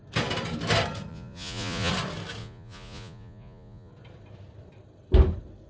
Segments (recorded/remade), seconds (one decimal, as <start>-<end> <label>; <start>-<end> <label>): 0.0-1.1 recorded; 1.1-1.9 remade; 1.9-2.4 recorded; 2.4-3.9 remade; 3.9-5.7 recorded